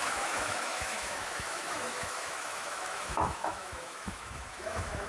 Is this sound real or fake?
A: fake